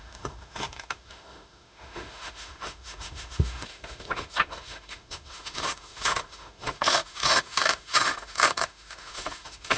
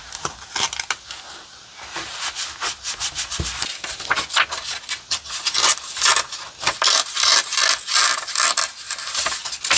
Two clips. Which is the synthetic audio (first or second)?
first